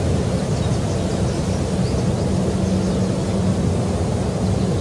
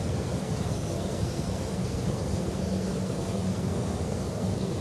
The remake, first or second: second